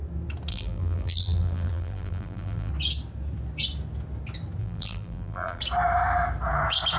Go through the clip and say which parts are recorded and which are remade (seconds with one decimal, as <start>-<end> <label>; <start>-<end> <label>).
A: 0.0-0.5 recorded; 0.5-2.7 remade; 2.7-4.6 recorded; 4.6-5.6 remade; 5.6-7.0 recorded